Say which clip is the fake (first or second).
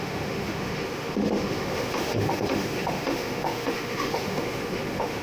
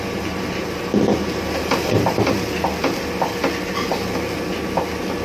first